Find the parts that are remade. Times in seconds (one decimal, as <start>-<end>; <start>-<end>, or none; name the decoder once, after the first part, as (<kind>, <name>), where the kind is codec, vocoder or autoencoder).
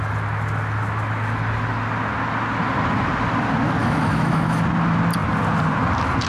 3.8-4.6 (autoencoder, DAC-VAE)